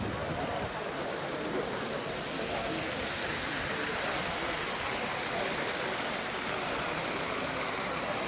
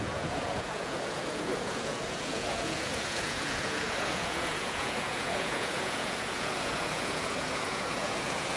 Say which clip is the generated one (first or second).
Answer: second